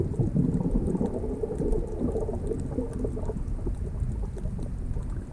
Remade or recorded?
recorded